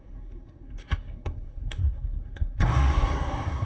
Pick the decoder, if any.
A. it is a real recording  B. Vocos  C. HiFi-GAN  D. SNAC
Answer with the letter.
D